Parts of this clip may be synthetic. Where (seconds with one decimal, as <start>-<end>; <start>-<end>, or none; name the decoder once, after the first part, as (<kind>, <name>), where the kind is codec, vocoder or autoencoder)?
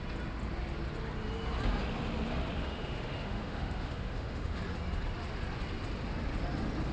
2.6-4.6 (autoencoder, DAC-VAE)